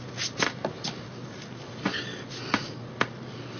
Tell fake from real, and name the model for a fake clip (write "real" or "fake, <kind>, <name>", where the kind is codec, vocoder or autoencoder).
real